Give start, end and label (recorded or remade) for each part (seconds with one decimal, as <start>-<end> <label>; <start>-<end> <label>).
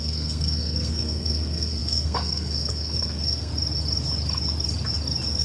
0.0-3.5 remade; 3.5-5.4 recorded